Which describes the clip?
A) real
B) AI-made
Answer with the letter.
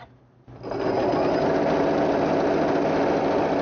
A